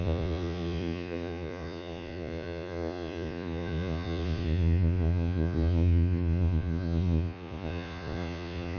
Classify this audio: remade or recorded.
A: remade